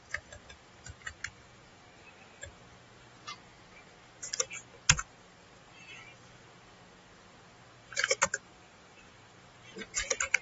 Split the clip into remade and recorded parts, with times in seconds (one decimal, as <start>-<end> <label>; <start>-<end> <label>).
0.0-1.0 recorded; 1.0-2.6 remade; 2.6-7.8 recorded; 7.8-9.4 remade; 9.4-10.4 recorded